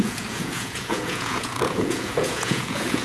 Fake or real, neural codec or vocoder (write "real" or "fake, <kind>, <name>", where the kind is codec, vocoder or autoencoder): fake, vocoder, Vocos